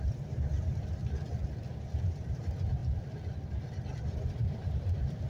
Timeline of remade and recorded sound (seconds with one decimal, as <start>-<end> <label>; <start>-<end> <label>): 0.0-1.0 remade; 1.0-1.8 recorded; 1.8-2.8 remade; 2.8-4.3 recorded; 4.3-5.3 remade

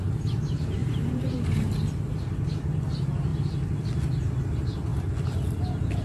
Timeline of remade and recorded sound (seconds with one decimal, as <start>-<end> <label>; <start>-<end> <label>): 0.0-0.8 recorded; 0.8-1.7 remade; 1.7-6.0 recorded

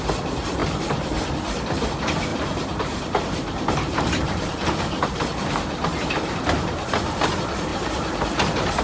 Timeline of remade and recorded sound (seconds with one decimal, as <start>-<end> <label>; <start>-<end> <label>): 0.0-2.3 recorded; 2.3-6.9 remade; 6.9-7.7 recorded; 7.7-8.8 remade

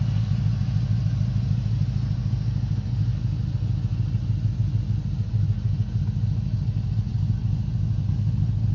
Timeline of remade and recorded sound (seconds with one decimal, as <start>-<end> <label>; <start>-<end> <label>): 0.0-8.7 recorded